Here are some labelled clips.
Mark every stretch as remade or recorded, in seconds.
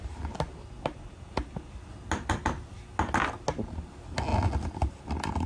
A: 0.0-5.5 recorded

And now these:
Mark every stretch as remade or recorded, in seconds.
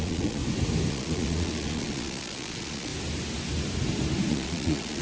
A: 0.0-0.4 remade; 0.4-0.9 recorded; 0.9-2.9 remade; 2.9-4.3 recorded; 4.3-5.0 remade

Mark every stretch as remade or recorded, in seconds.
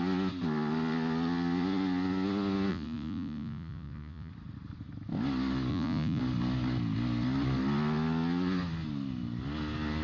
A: 0.0-2.7 recorded; 2.7-4.3 remade; 4.3-5.7 recorded; 5.7-6.2 remade; 6.2-10.0 recorded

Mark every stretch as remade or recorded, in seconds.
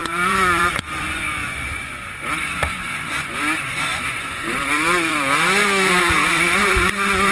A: 0.0-7.3 remade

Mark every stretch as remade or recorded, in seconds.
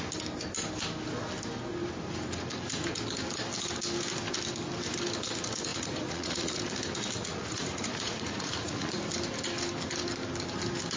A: 0.0-5.7 recorded; 5.7-6.6 remade; 6.6-7.2 recorded; 7.2-9.0 remade; 9.0-11.0 recorded